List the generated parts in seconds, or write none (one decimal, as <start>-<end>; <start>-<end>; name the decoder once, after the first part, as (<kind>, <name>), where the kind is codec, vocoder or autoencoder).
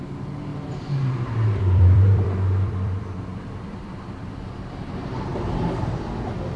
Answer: 0.5-4.5 (vocoder, BigVGAN v2)